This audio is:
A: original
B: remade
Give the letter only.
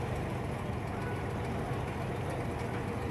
A